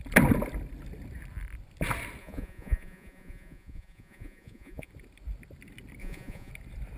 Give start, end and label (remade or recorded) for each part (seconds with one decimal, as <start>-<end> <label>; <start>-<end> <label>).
0.0-2.2 recorded; 2.2-4.9 remade; 4.9-6.0 recorded; 6.0-6.5 remade; 6.5-7.0 recorded